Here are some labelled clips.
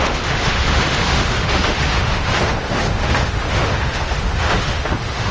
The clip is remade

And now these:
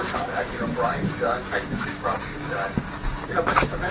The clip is remade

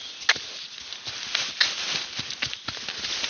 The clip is recorded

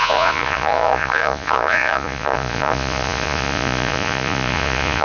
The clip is remade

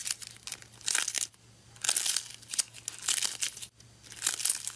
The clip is recorded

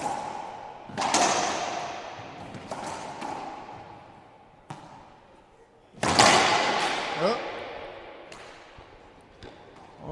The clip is recorded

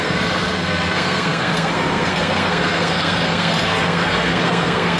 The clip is remade